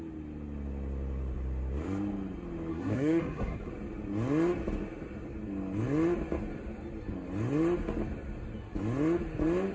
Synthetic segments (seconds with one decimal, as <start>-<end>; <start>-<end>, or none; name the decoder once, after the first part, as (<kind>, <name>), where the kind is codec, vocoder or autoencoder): 2.7-3.7 (codec, SNAC)